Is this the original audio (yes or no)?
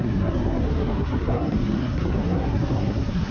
no